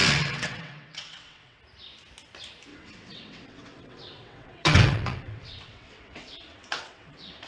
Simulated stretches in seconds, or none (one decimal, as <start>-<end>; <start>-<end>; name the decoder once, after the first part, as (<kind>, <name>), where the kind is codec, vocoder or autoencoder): 0.0-1.6 (vocoder, WaveNeXt); 2.7-7.5